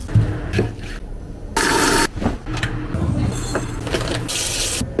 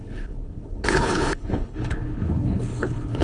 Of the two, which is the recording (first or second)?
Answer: first